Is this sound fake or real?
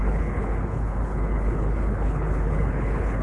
fake